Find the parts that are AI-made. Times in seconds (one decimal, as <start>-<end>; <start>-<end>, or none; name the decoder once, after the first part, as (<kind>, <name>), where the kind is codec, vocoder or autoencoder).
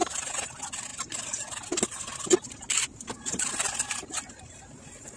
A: none